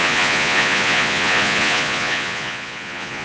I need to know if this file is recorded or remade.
remade